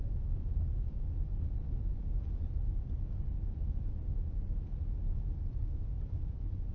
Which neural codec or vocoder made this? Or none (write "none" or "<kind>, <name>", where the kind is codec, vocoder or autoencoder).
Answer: vocoder, Vocos